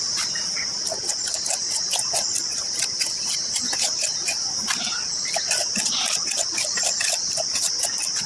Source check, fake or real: real